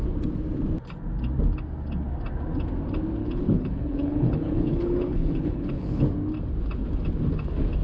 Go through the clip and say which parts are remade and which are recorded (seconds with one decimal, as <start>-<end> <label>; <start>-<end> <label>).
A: 0.0-3.2 recorded; 3.2-6.0 remade; 6.0-7.8 recorded